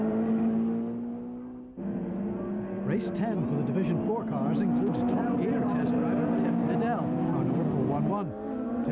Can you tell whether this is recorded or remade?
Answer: recorded